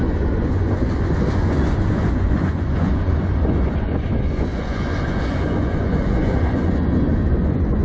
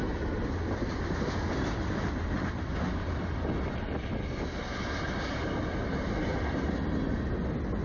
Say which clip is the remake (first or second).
first